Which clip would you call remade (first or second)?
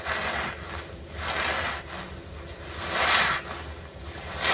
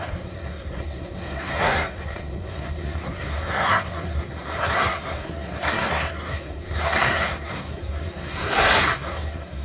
second